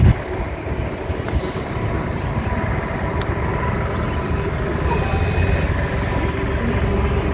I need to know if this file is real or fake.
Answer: real